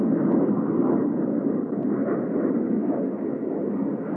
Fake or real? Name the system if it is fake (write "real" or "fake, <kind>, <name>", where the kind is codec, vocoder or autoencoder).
real